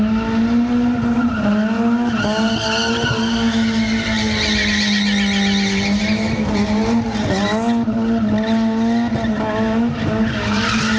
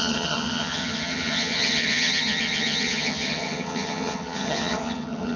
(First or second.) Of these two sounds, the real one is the first